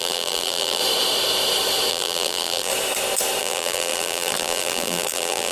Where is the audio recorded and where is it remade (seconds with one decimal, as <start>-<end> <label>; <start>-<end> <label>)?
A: 0.0-0.8 remade; 0.8-1.9 recorded; 1.9-2.7 remade; 2.7-3.4 recorded; 3.4-5.5 remade